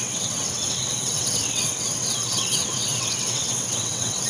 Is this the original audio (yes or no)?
no